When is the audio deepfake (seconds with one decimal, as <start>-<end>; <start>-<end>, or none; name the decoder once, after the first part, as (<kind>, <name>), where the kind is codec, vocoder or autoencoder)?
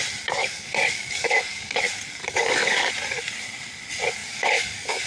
0.4-1.8 (codec, DAC); 2.2-2.9; 4.2-5.1